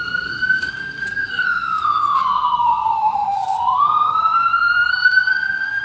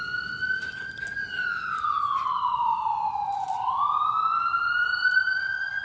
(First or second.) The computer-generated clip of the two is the first